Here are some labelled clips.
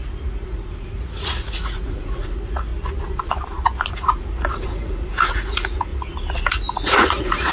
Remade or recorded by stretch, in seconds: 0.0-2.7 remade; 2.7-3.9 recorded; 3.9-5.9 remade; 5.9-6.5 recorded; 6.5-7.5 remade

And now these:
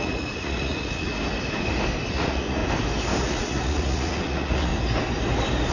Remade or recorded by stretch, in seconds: 0.0-1.1 remade; 1.1-2.1 recorded; 2.1-2.6 remade; 2.6-3.2 recorded; 3.2-4.7 remade; 4.7-5.7 recorded

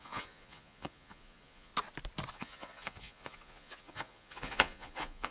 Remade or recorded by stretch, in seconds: 0.0-1.7 remade; 1.7-2.3 recorded; 2.3-5.3 remade

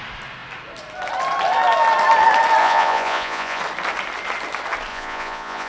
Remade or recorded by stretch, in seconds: 0.0-2.6 recorded; 2.6-3.6 remade; 3.6-4.9 recorded; 4.9-5.7 remade

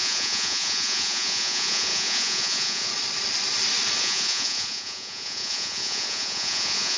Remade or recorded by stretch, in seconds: 0.0-2.9 remade; 2.9-4.0 recorded; 4.0-7.0 remade

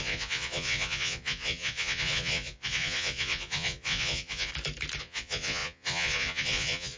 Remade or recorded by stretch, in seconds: 0.0-4.5 remade; 4.5-5.0 recorded; 5.0-7.0 remade

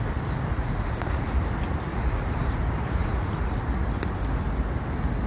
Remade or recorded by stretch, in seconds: 0.0-0.5 recorded; 0.5-1.4 remade; 1.4-1.9 recorded; 1.9-2.6 remade; 2.6-3.0 recorded; 3.0-3.6 remade; 3.6-5.3 recorded